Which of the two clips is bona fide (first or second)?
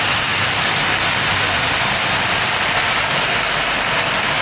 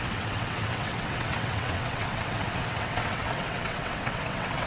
first